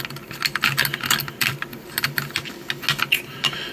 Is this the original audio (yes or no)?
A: yes